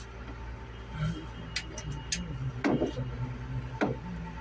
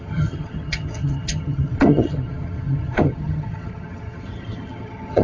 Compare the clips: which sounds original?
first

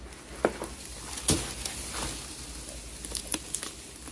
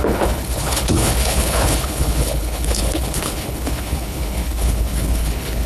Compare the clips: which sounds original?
first